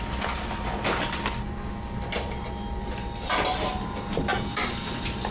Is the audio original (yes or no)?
yes